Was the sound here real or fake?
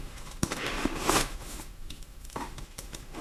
fake